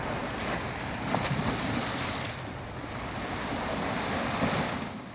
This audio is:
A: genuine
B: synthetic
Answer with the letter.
A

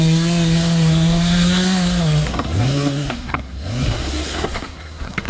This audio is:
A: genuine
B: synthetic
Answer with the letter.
B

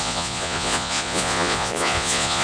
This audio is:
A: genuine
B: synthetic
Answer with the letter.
B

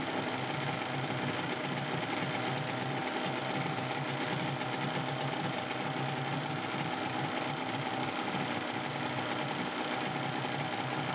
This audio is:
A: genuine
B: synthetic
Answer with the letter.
A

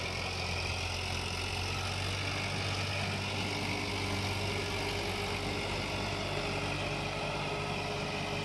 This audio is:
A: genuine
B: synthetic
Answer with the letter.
A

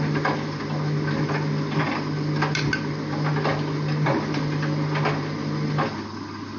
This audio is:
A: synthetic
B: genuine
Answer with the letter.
B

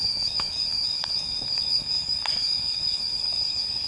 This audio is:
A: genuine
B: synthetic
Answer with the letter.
B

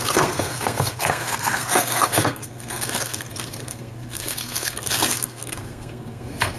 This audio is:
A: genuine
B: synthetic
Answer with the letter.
B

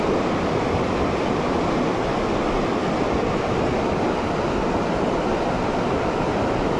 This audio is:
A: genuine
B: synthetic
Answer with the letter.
A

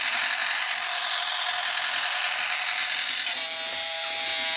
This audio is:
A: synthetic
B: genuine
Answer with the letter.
B